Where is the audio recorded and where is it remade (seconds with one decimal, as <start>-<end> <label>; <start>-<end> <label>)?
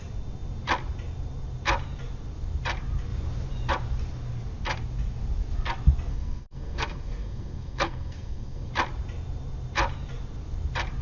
0.0-6.1 recorded; 6.1-8.7 remade; 8.7-11.0 recorded